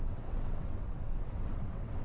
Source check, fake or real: fake